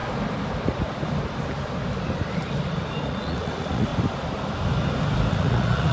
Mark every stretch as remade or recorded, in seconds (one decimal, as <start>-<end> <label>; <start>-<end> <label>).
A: 0.0-3.0 recorded; 3.0-3.9 remade; 3.9-5.3 recorded; 5.3-5.9 remade